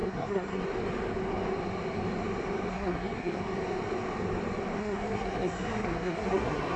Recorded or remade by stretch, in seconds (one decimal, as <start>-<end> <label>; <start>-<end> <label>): 0.0-0.6 remade; 0.6-2.7 recorded; 2.7-3.4 remade; 3.4-4.8 recorded; 4.8-6.8 remade